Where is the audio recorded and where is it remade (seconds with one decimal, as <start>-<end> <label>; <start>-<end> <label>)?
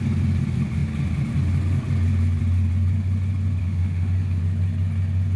0.0-3.6 recorded; 3.6-4.4 remade; 4.4-5.4 recorded